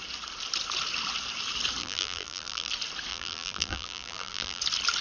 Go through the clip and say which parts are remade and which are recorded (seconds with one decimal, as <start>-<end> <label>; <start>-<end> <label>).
0.0-1.8 recorded; 1.8-2.7 remade; 2.7-3.1 recorded; 3.1-4.6 remade; 4.6-5.0 recorded